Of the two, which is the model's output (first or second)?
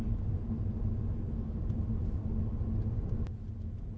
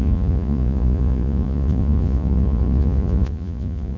second